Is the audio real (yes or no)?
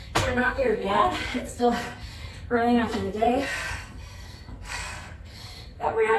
no